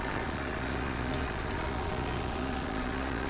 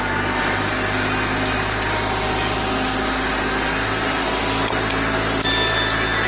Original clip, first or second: second